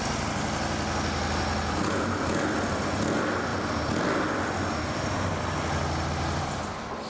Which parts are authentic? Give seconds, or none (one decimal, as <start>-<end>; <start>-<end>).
0.0-7.1